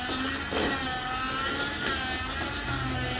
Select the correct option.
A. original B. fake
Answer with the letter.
A